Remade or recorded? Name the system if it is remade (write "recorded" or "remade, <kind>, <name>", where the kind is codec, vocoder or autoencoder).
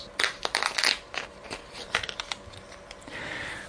recorded